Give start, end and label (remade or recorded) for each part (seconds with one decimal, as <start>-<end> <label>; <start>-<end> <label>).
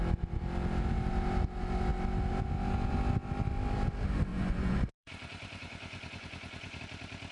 0.0-4.3 recorded; 4.3-6.8 remade; 6.8-7.3 recorded